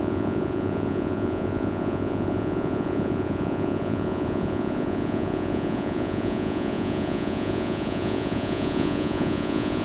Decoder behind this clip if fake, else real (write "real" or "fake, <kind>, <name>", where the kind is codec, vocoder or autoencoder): fake, vocoder, Vocos